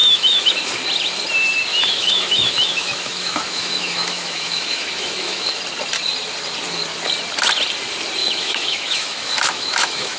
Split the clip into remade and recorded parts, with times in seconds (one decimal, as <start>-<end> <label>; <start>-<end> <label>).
0.0-0.7 remade; 0.7-1.7 recorded; 1.7-5.6 remade; 5.6-8.2 recorded; 8.2-10.2 remade